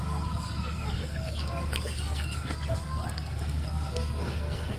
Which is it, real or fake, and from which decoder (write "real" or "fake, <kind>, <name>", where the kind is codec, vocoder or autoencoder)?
fake, codec, SNAC